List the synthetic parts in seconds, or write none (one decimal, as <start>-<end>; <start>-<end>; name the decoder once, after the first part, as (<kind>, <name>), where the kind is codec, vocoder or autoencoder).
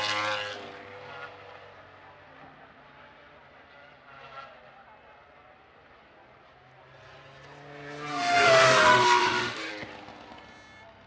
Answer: 8.1-9.7 (autoencoder, DAC-VAE)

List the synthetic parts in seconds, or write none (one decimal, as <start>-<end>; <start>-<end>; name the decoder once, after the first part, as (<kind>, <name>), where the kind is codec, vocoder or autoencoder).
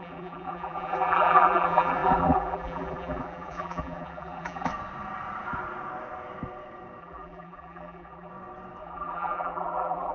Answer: 0.0-4.7 (vocoder, BigVGAN v2); 7.0-8.3; 8.8-10.1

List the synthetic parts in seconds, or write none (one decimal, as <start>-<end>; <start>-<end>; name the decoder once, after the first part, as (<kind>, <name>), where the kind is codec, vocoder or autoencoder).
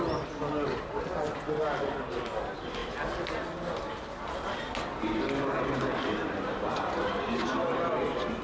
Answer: none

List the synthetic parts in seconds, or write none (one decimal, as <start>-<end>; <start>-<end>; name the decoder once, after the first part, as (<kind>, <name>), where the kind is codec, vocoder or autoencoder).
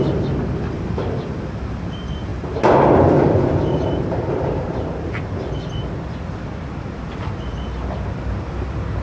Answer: none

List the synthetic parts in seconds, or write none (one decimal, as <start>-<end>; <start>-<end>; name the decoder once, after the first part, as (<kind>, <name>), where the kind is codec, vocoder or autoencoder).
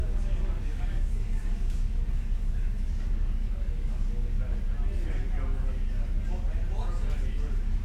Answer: 0.0-4.5 (codec, DAC)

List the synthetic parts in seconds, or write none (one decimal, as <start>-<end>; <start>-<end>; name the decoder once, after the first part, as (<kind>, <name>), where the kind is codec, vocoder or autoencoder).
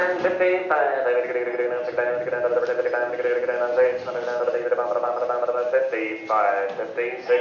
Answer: none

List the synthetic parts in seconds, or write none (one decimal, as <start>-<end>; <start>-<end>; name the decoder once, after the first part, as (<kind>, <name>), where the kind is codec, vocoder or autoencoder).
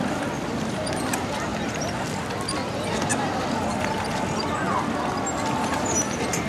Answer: none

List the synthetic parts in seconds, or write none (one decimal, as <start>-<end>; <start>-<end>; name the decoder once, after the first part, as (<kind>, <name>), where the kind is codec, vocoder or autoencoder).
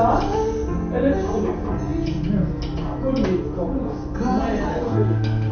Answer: 4.7-5.5 (codec, SNAC)